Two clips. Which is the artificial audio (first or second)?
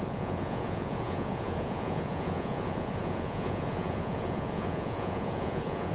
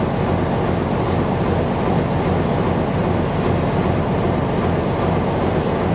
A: first